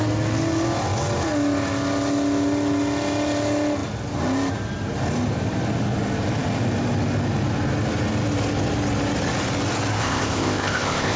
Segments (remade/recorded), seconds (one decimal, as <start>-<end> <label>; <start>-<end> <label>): 0.0-10.0 recorded; 10.0-11.2 remade